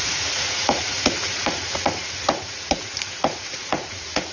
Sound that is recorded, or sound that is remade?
remade